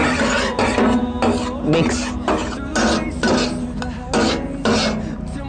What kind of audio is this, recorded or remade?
recorded